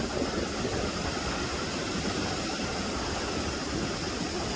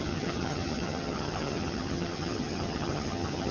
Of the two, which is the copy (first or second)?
second